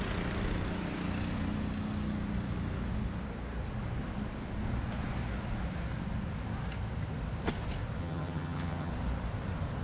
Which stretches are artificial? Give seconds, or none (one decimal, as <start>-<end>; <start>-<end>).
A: 8.0-8.9